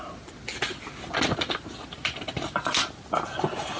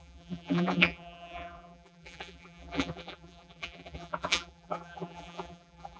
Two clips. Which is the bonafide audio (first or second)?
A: first